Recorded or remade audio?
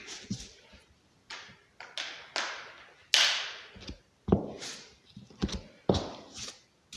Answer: recorded